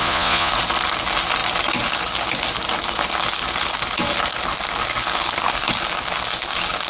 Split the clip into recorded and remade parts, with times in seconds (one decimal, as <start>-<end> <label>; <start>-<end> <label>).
0.0-0.5 remade; 0.5-6.9 recorded